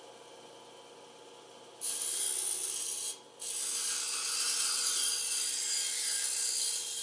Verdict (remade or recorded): recorded